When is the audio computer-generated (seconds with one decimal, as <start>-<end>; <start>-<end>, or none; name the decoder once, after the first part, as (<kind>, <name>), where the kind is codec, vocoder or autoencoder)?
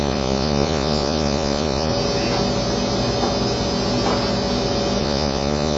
0.0-1.9 (vocoder, Vocos); 5.0-5.8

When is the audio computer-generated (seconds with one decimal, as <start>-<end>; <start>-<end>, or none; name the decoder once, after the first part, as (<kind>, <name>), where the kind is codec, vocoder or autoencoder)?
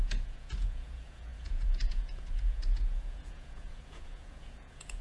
0.0-5.0 (vocoder, Vocos)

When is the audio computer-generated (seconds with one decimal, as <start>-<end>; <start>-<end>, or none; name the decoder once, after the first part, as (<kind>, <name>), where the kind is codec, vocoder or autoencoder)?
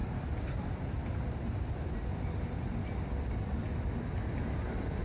none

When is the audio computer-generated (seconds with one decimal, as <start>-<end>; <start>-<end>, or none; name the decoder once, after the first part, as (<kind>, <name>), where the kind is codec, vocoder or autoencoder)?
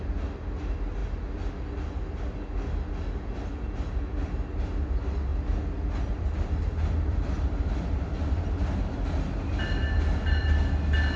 5.3-8.3 (vocoder, BigVGAN v2); 9.5-10.6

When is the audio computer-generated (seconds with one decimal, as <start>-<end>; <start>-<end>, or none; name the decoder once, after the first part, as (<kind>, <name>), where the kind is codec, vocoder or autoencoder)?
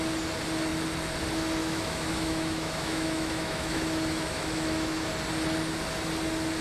1.6-5.1 (autoencoder, DAC-VAE)